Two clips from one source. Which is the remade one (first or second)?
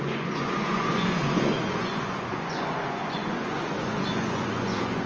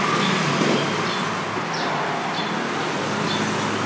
first